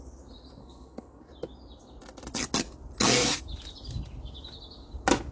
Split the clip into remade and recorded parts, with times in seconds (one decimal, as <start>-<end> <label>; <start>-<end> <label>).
0.0-0.6 recorded; 0.6-1.3 remade; 1.3-5.3 recorded